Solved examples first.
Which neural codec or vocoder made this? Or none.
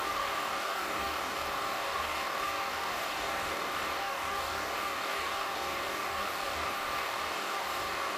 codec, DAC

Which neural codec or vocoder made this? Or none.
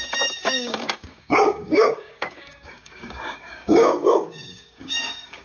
codec, DAC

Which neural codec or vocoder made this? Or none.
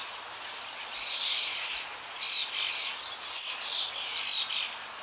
none